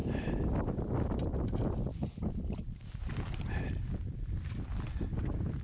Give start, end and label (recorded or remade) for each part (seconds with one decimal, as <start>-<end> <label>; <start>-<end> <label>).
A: 0.0-5.6 recorded